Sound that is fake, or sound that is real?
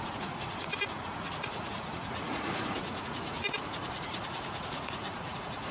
fake